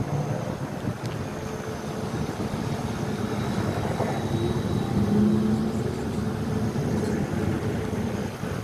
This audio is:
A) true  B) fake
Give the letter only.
A